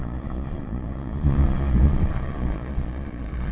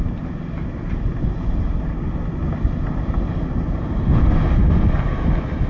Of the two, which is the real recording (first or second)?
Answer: second